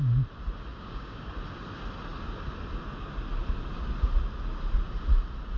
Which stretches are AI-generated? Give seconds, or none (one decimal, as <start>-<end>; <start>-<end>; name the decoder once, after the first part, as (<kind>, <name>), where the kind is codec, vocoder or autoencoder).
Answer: 0.7-1.3 (codec, DAC)